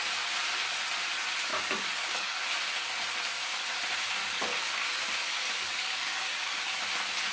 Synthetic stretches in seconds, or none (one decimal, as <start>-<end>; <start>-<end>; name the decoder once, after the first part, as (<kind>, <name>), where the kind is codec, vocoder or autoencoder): 1.5-2.4 (codec, DAC); 4.2-6.8